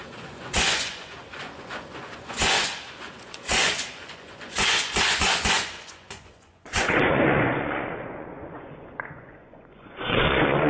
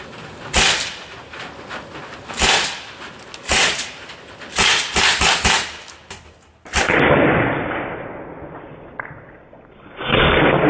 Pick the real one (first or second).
second